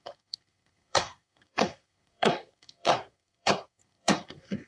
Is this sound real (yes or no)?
no